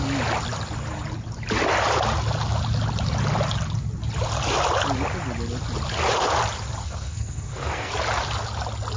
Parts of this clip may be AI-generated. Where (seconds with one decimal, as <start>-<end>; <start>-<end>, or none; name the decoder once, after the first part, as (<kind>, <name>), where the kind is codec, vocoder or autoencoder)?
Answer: 6.8-7.9 (codec, SNAC)